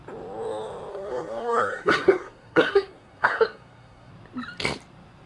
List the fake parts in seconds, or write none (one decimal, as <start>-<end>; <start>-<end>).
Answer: 0.9-4.1